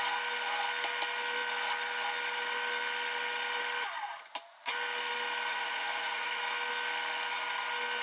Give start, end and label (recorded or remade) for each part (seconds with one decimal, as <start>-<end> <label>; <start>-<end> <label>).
0.0-5.5 recorded; 5.5-6.4 remade; 6.4-8.0 recorded